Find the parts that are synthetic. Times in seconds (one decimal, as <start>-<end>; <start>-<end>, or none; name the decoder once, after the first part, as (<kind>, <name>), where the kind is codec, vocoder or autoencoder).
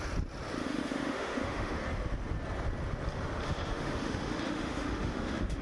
0.6-1.8 (autoencoder, DAC-VAE); 3.4-5.6